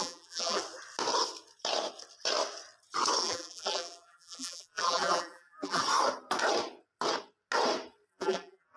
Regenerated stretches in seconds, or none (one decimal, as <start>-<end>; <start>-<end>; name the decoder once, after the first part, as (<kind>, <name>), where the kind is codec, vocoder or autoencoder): 0.0-0.6 (vocoder, BigVGAN v2); 3.2-5.8; 8.1-8.8